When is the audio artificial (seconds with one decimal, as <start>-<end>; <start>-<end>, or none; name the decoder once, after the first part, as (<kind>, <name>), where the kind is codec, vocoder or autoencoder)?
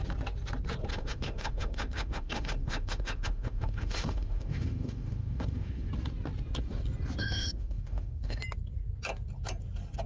0.9-5.9 (autoencoder, DAC-VAE); 7.2-8.4